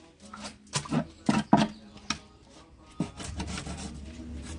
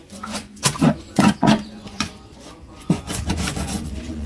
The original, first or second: first